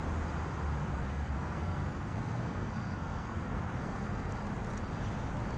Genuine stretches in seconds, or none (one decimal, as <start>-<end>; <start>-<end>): 0.0-0.9; 4.3-5.6